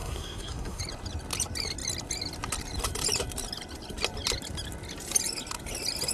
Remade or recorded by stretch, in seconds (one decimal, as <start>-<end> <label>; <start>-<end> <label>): 0.0-0.8 remade; 0.8-6.1 recorded